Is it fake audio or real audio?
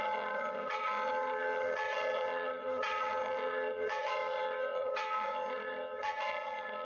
fake